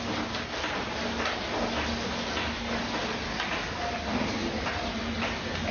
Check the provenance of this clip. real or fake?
real